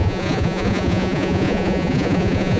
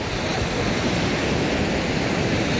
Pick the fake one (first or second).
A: first